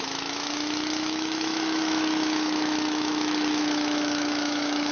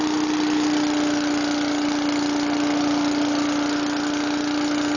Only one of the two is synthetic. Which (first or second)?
first